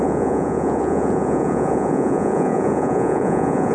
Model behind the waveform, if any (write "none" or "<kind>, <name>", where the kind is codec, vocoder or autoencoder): vocoder, Vocos